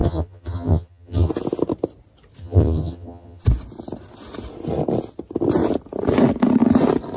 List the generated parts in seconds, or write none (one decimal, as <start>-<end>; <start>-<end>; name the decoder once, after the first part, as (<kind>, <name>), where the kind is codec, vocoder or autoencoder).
0.0-1.3 (vocoder, HiFi-GAN); 2.4-3.4